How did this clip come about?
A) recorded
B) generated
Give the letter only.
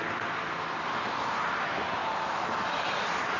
A